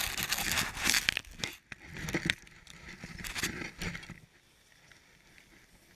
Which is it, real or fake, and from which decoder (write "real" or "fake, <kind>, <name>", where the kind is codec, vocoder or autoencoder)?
real